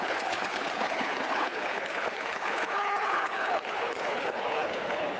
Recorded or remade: remade